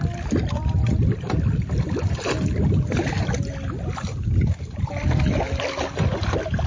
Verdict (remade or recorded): recorded